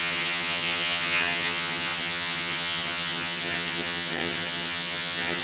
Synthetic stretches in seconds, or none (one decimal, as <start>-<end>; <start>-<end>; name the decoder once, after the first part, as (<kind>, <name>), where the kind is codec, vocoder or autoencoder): 0.0-5.4 (vocoder, HiFi-GAN)